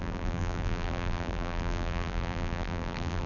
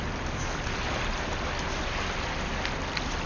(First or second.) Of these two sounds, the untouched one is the second